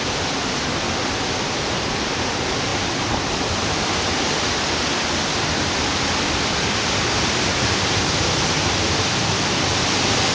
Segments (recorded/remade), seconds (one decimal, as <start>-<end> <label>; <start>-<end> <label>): 0.0-10.3 recorded